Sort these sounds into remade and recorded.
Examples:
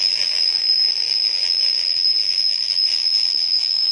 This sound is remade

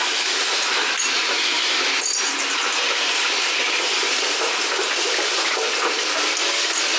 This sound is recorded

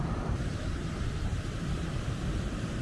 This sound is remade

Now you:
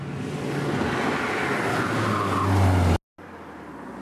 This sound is recorded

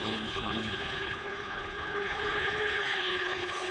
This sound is remade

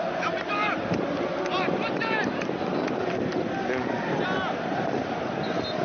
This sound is recorded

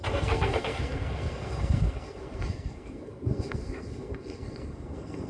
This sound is remade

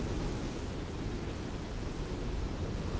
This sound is recorded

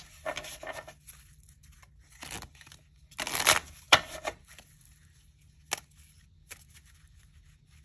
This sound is recorded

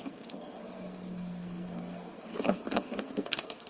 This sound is remade